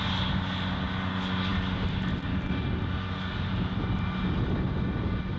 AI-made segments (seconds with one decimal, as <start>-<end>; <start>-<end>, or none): none